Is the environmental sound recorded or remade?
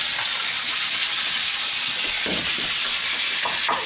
recorded